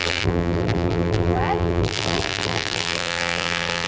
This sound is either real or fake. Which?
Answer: fake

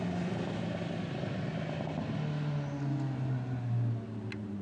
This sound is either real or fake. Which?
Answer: real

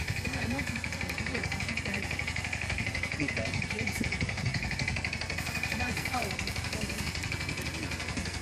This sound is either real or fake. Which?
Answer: fake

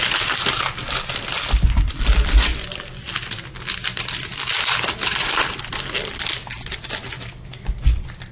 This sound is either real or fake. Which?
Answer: real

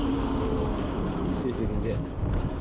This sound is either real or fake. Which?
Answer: fake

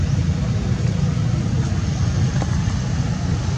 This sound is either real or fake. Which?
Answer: real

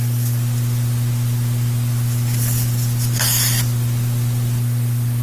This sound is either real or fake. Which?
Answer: real